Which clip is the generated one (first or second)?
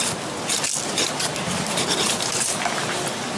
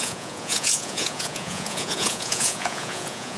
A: second